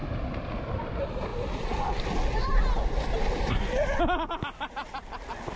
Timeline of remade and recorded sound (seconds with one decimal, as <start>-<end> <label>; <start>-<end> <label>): 0.0-5.6 recorded